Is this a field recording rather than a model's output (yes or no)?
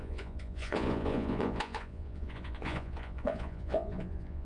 no